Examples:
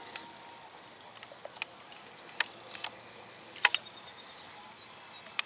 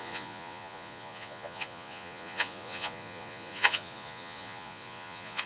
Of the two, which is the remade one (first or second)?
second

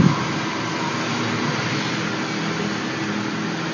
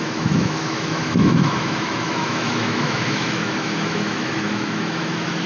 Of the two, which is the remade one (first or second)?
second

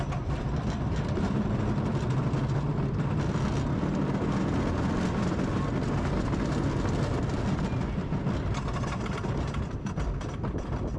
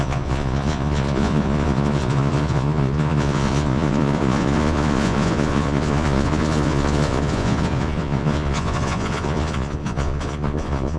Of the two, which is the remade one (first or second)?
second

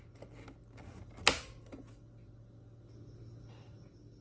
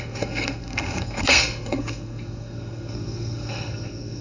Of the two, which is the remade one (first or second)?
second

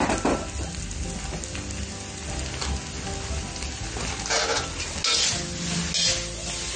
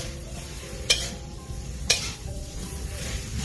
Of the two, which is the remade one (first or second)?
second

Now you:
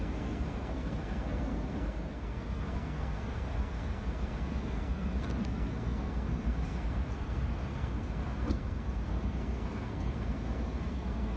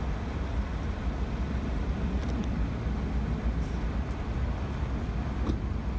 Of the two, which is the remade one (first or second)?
first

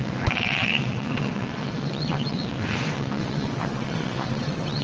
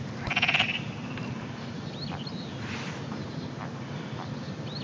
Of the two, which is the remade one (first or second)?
first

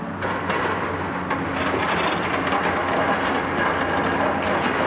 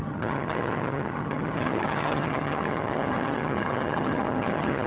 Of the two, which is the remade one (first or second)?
second